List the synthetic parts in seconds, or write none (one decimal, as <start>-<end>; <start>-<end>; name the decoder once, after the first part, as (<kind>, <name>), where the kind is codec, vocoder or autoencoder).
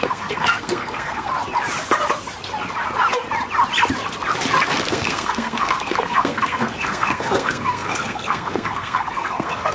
0.0-1.3 (codec, SNAC); 4.9-9.7